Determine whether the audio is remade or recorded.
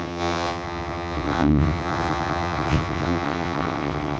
remade